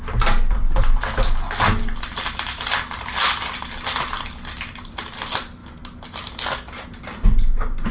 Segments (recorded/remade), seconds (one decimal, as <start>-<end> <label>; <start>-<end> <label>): 0.0-7.9 recorded